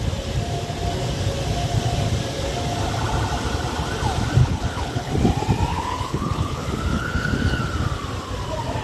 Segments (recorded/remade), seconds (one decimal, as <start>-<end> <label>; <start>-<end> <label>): 0.0-4.4 recorded; 4.4-5.1 remade; 5.1-5.7 recorded; 5.7-7.6 remade; 7.6-8.8 recorded